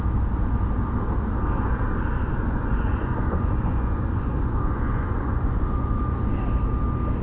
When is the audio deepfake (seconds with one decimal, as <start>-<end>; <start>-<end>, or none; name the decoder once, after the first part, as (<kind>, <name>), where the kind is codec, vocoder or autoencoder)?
2.3-6.0 (vocoder, Vocos)